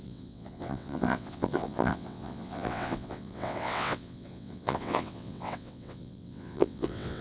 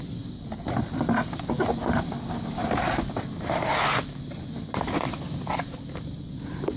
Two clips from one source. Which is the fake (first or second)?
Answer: first